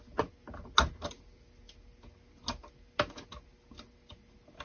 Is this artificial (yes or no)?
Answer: no